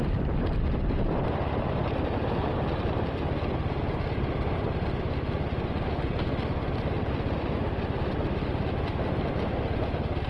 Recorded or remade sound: recorded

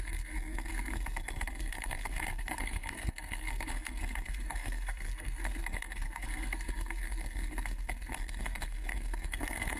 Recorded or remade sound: remade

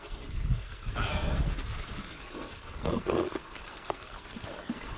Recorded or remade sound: remade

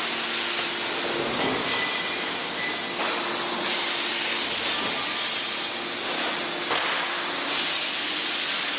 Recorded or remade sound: recorded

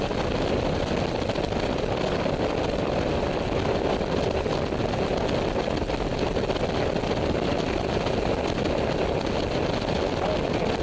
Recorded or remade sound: recorded